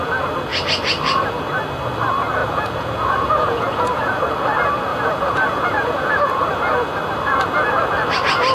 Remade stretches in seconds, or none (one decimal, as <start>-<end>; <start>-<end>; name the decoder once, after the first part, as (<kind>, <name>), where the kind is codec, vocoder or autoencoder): 2.4-4.2 (vocoder, Vocos); 4.9-6.3